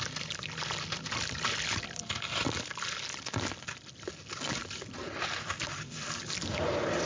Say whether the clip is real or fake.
real